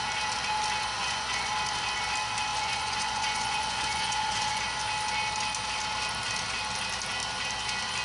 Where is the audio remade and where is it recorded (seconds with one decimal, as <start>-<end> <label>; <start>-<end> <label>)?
0.0-1.0 recorded; 1.0-1.5 remade; 1.5-2.5 recorded; 2.5-4.6 remade; 4.6-8.0 recorded